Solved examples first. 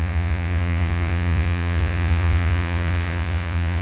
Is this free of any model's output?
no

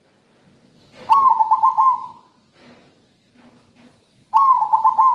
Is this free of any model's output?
yes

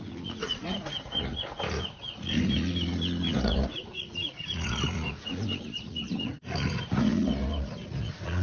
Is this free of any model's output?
no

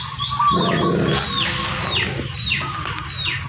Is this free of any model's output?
yes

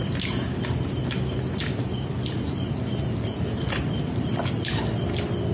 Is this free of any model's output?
yes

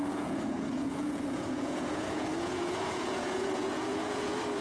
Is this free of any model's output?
no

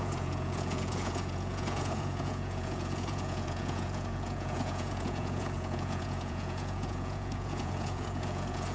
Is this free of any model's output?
no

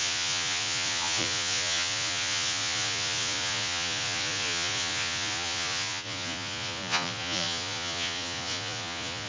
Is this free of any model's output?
no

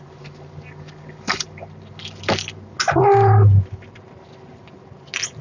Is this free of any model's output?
yes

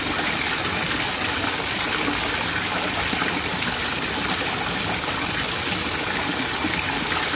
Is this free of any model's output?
yes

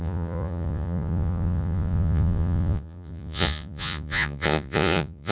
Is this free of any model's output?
no